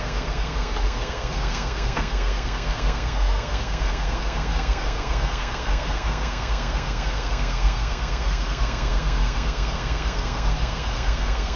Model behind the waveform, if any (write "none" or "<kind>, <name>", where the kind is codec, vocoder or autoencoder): codec, SNAC